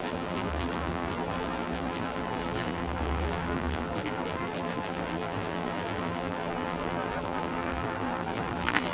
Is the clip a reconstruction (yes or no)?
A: yes